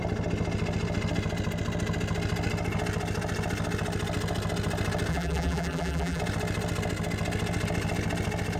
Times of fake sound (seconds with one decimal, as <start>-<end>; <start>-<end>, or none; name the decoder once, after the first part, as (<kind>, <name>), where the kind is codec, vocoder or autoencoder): 5.1-6.2 (vocoder, BigVGAN v2)